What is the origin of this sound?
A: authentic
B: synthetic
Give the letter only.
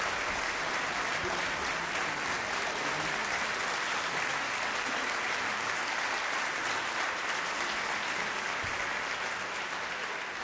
A